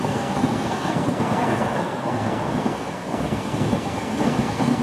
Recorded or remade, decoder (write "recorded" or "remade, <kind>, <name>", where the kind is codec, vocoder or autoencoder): remade, codec, SNAC